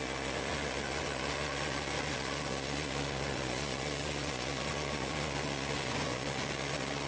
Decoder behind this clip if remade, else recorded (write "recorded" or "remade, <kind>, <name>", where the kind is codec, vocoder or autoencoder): remade, vocoder, Vocos